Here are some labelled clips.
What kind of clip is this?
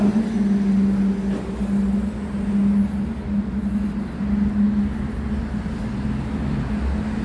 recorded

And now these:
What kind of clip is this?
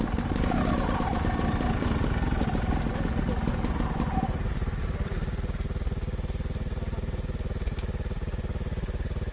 recorded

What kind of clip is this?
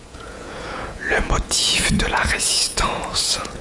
remade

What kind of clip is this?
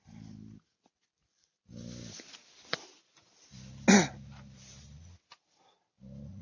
recorded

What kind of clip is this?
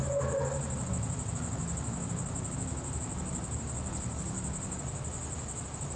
recorded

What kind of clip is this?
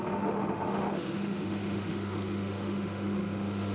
remade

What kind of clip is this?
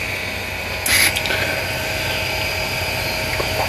recorded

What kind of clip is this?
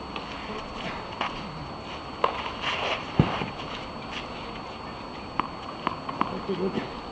recorded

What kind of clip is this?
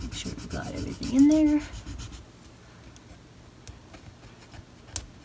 recorded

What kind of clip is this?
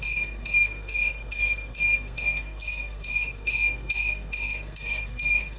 remade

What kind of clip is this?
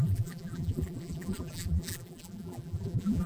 remade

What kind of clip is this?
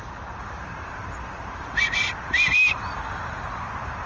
remade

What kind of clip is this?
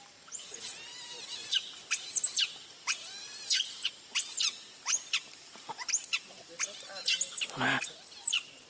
recorded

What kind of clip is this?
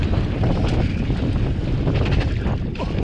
recorded